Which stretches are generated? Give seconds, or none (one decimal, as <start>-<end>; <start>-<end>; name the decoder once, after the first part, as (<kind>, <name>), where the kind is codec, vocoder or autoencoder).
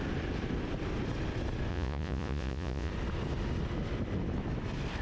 1.7-2.9 (vocoder, Vocos)